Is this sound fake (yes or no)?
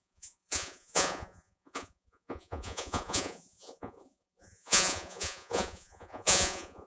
yes